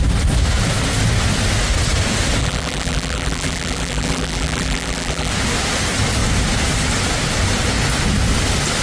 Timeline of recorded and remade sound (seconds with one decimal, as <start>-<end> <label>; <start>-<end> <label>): 0.0-2.4 recorded; 2.4-5.3 remade; 5.3-8.8 recorded